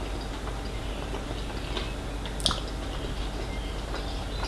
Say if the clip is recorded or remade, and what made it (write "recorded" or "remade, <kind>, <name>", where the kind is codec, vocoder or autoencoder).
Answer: recorded